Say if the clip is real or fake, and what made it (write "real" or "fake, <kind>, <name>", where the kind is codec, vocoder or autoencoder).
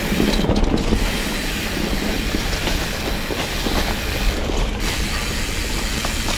real